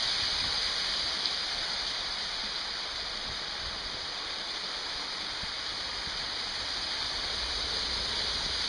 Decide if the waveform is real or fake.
real